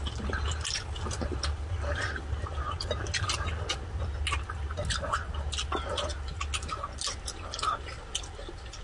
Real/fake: real